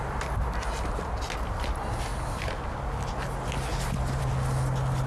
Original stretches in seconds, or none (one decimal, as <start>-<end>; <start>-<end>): 0.0-5.1